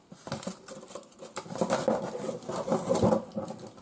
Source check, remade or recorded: recorded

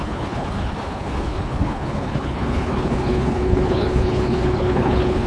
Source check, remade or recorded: remade